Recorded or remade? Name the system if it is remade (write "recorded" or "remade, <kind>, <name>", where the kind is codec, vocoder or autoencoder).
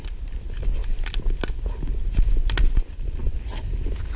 recorded